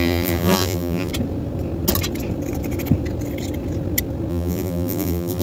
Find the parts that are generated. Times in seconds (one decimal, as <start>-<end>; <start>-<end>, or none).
0.0-1.1; 4.3-5.4